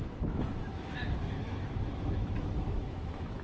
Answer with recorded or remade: remade